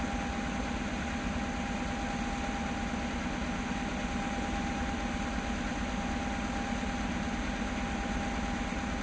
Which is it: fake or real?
real